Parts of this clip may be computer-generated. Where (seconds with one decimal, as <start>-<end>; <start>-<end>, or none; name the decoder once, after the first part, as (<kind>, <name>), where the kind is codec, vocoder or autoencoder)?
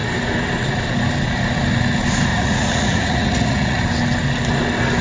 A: 2.3-3.8 (vocoder, Vocos)